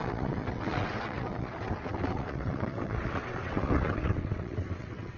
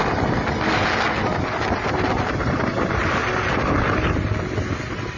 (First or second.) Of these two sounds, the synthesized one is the first